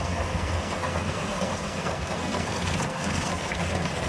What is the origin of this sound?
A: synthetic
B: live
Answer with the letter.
A